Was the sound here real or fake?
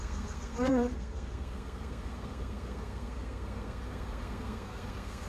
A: fake